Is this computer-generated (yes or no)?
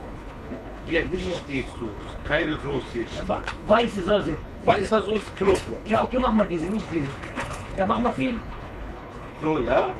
yes